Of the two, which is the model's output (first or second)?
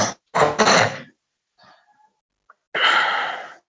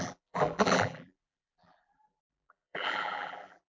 second